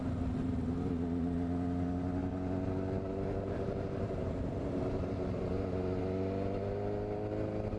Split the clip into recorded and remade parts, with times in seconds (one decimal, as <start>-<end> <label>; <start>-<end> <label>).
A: 0.0-7.8 recorded